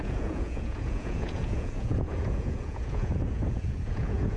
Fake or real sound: fake